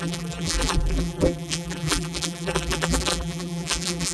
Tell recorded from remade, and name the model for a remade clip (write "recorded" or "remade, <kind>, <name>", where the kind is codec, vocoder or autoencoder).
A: remade, vocoder, BigVGAN v2